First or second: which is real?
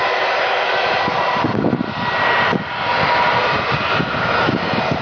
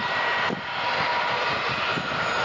first